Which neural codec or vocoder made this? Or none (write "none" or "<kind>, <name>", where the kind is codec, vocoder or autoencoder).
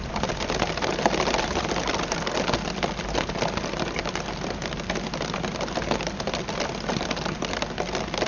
none